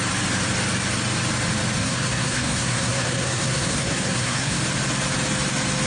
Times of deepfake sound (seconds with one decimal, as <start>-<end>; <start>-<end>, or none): 1.8-4.6